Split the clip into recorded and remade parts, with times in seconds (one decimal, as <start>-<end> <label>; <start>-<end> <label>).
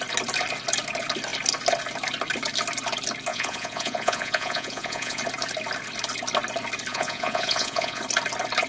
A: 0.0-3.3 recorded; 3.3-5.2 remade; 5.2-6.9 recorded; 6.9-8.0 remade; 8.0-8.7 recorded